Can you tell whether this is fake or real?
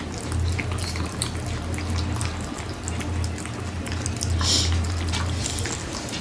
real